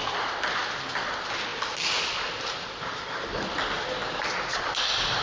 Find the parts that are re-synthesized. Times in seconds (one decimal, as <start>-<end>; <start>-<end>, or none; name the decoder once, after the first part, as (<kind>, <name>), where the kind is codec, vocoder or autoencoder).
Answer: none